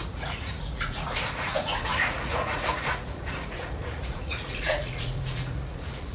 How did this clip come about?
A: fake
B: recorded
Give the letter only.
A